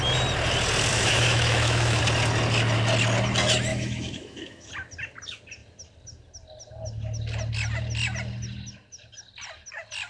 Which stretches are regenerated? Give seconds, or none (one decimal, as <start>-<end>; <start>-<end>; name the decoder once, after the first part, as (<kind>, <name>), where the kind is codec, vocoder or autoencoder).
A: 0.9-2.0 (autoencoder, DAC-VAE); 3.7-4.7